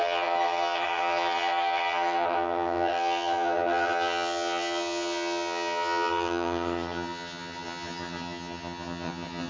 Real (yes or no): no